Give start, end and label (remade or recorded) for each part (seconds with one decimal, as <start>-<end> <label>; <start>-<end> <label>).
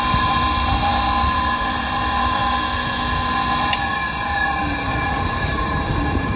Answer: 0.0-2.4 remade; 2.4-4.2 recorded; 4.2-6.4 remade